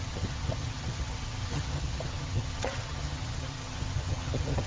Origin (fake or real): fake